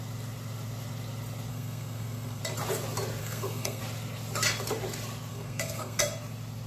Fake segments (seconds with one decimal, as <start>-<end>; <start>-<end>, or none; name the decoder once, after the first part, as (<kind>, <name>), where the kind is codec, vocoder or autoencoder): 1.5-2.4 (codec, SNAC); 3.2-3.8; 5.3-6.0